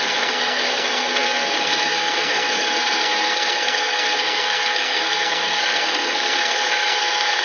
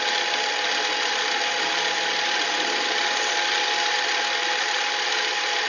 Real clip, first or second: second